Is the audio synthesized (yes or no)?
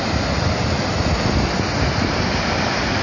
no